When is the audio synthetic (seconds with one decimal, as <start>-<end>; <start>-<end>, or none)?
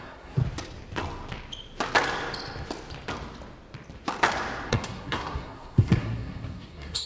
0.0-0.4; 4.7-7.1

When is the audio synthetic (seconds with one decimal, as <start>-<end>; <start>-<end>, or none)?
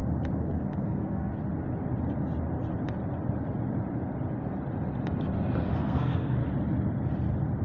0.8-1.3; 5.7-6.4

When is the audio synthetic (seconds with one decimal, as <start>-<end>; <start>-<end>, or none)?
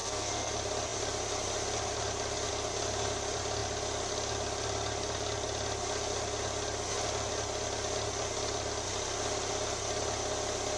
0.0-0.5